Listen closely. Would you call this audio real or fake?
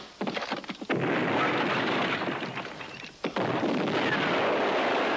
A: real